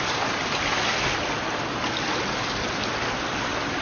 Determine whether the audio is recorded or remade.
recorded